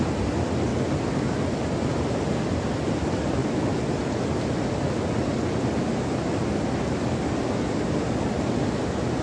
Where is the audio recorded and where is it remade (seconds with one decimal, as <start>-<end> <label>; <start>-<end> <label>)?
0.0-9.2 recorded